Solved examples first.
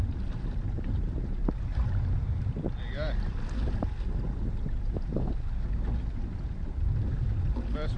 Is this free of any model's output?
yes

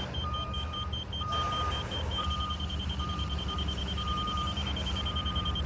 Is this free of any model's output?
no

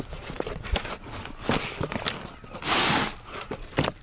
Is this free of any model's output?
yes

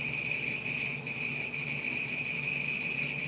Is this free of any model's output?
no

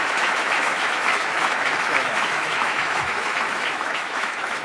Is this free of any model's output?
no